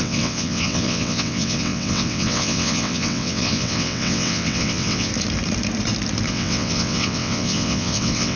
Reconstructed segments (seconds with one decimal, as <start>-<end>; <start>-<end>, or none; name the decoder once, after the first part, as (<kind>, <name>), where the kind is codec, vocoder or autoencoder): 0.0-5.1 (vocoder, WaveNeXt); 6.3-8.4